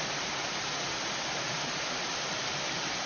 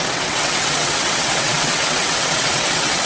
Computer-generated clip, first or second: second